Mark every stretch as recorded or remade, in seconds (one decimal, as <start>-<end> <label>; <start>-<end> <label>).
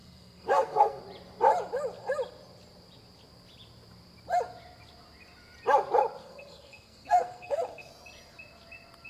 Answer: 0.0-1.0 remade; 1.0-6.2 recorded; 6.2-7.9 remade; 7.9-9.1 recorded